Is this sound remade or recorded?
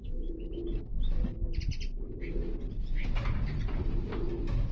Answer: recorded